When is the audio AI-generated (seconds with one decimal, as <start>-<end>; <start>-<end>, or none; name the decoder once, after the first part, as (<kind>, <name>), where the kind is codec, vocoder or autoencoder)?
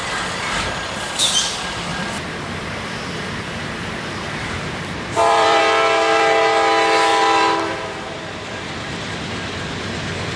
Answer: 0.0-1.1 (vocoder, BigVGAN v2); 1.9-5.6; 7.1-9.1